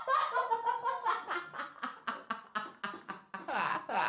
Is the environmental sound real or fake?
real